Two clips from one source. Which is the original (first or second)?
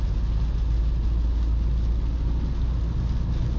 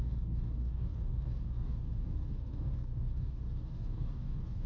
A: first